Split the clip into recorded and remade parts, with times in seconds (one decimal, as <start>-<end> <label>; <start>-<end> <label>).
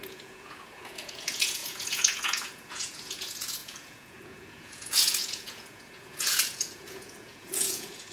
0.0-8.1 remade